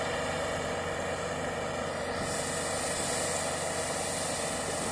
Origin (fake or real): real